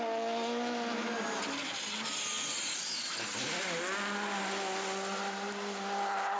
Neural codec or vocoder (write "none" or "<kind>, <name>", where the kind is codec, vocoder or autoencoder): none